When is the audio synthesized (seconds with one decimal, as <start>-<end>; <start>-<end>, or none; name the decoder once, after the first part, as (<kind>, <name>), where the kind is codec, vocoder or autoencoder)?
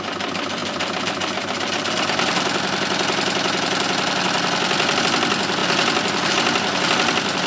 0.6-5.0 (vocoder, BigVGAN v2); 5.6-6.3